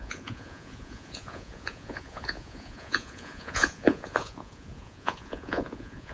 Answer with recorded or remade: remade